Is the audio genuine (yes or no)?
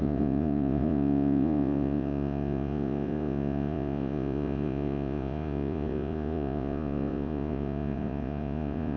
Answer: no